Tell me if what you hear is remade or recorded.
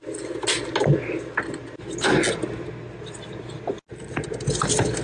recorded